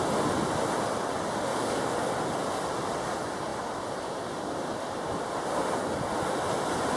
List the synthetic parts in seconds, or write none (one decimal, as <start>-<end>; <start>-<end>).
1.5-2.1